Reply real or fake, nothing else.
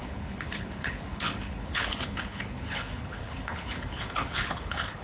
fake